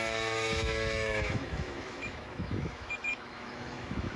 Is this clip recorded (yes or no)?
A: no